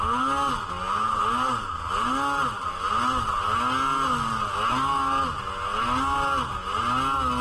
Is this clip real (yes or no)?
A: yes